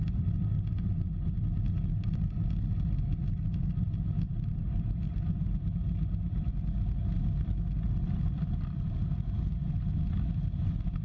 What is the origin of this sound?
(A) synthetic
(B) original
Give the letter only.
B